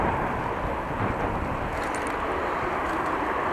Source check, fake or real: real